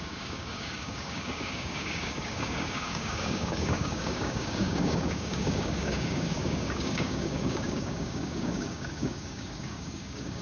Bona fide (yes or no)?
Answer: no